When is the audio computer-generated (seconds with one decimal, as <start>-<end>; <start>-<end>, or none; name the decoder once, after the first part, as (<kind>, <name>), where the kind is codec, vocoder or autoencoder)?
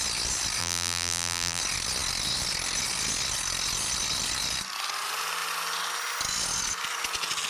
0.6-1.6 (vocoder, BigVGAN v2)